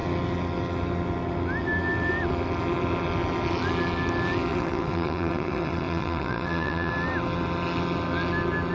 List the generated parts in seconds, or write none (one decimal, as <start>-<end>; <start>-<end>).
4.5-6.9